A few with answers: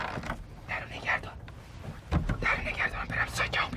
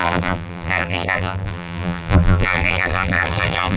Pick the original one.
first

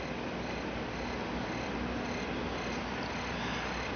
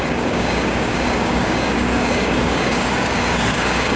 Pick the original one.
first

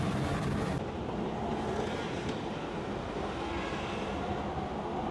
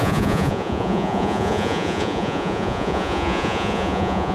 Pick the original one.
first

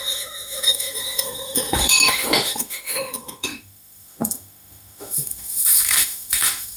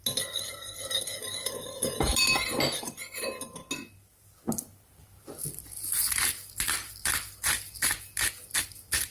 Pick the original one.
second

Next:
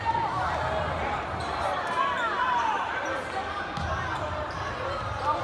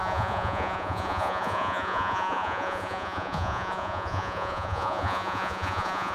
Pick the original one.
first